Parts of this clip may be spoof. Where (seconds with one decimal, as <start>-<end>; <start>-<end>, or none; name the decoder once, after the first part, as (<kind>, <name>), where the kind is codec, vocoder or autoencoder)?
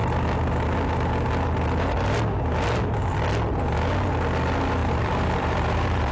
4.8-6.1 (vocoder, BigVGAN v2)